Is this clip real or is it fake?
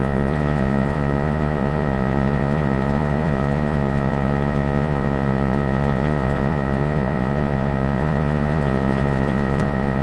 fake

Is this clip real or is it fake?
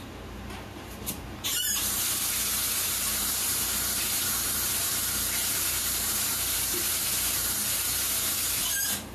fake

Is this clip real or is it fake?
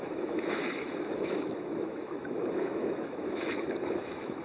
fake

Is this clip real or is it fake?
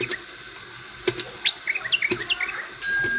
real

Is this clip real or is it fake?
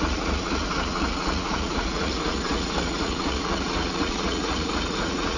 fake